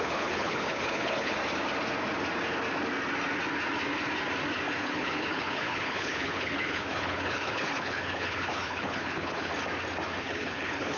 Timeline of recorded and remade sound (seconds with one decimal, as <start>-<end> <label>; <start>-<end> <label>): 0.0-1.4 remade; 1.4-4.8 recorded; 4.8-9.5 remade; 9.5-10.2 recorded; 10.2-11.0 remade